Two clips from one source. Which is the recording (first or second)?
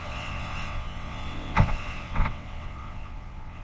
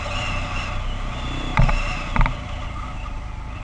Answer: second